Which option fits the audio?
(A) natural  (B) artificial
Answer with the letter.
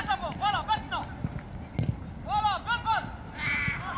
A